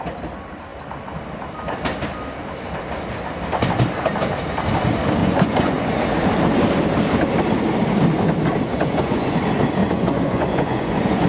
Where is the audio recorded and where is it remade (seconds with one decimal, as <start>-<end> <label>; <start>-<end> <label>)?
0.0-5.2 recorded; 5.2-6.0 remade; 6.0-8.7 recorded; 8.7-9.4 remade; 9.4-9.8 recorded; 9.8-11.3 remade